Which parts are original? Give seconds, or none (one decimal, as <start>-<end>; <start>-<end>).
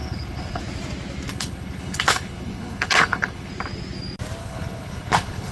0.6-1.3; 3.5-4.4